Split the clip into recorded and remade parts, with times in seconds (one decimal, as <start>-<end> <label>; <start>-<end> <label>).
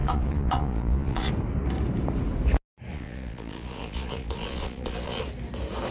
0.0-1.3 remade; 1.3-2.9 recorded; 2.9-5.2 remade; 5.2-5.9 recorded